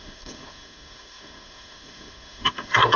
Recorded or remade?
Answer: remade